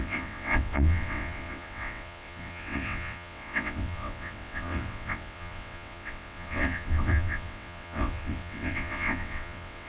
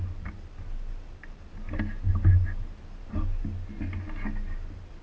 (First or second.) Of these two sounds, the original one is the second